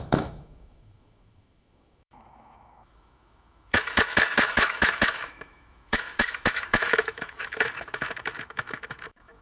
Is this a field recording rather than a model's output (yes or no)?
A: no